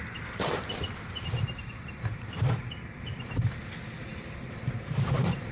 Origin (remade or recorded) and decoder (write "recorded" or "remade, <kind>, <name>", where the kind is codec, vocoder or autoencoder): remade, vocoder, BigVGAN v2